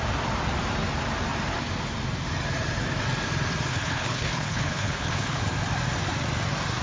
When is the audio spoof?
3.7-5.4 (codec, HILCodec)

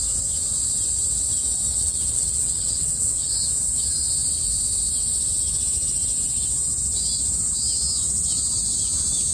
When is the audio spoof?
1.7-3.3 (vocoder, WaveNeXt)

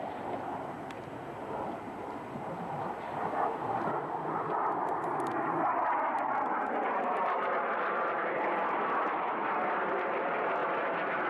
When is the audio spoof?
none

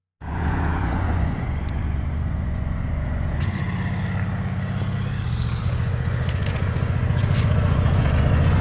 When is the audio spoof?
0.0-3.6 (vocoder, Vocos); 5.6-8.6